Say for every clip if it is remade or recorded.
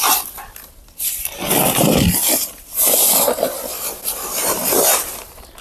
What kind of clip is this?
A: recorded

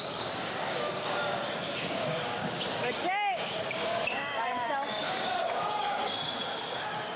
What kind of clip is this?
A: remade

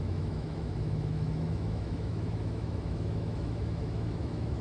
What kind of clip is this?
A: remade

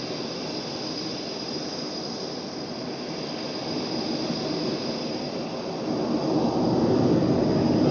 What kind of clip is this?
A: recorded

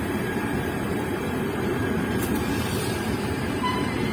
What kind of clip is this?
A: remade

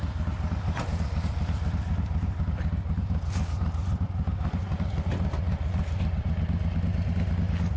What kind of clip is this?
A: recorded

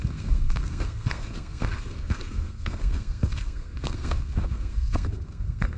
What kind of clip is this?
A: remade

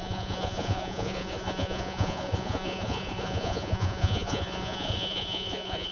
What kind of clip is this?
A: remade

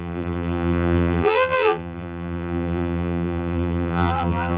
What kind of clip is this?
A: remade